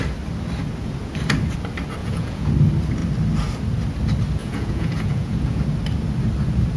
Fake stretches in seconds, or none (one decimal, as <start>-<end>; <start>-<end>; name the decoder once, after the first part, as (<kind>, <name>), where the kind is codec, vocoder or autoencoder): 2.0-2.5 (vocoder, Vocos); 4.4-5.6